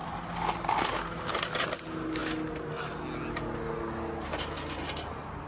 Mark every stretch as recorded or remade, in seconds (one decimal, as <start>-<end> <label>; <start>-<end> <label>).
0.0-5.5 recorded